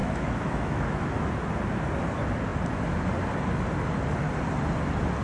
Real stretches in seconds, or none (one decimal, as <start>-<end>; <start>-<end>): 1.0-5.2